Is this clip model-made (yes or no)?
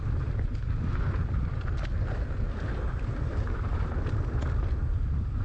no